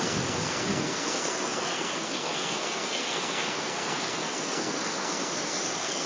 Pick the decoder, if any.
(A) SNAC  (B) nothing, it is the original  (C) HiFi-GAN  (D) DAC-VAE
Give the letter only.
A